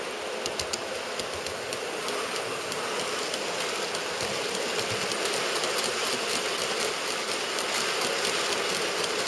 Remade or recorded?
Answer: recorded